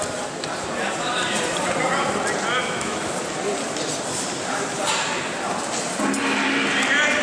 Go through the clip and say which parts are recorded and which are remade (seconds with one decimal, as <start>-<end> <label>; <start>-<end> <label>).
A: 0.0-2.6 recorded; 2.6-3.1 remade; 3.1-7.2 recorded